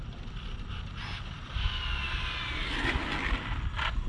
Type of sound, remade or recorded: recorded